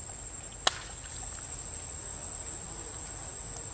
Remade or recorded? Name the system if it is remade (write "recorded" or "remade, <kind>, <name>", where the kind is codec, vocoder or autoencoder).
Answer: recorded